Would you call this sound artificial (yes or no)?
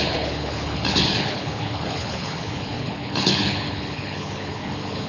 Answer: yes